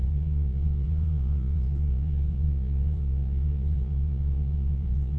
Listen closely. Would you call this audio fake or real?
fake